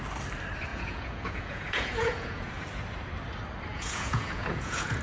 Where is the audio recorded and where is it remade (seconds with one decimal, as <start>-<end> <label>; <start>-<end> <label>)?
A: 0.0-0.7 recorded; 0.7-2.5 remade; 2.5-3.7 recorded; 3.7-5.0 remade